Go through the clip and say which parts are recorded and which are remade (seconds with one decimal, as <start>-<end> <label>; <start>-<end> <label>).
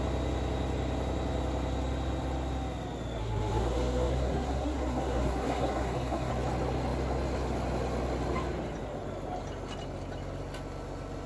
0.0-3.2 recorded; 3.2-6.3 remade; 6.3-11.3 recorded